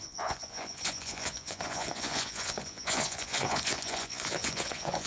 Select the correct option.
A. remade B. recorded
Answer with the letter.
A